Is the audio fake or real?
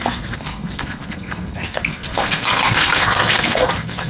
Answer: fake